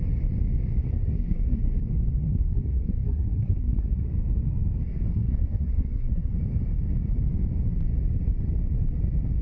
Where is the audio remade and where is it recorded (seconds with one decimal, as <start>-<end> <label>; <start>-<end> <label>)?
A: 0.0-0.8 recorded; 0.8-1.7 remade; 1.7-2.2 recorded; 2.2-4.1 remade; 4.1-5.1 recorded; 5.1-6.3 remade; 6.3-9.4 recorded